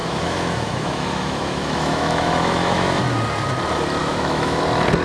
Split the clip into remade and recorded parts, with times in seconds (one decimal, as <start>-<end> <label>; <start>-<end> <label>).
0.0-3.0 remade; 3.0-4.0 recorded; 4.0-4.6 remade; 4.6-5.0 recorded